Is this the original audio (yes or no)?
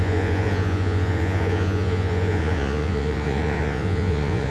no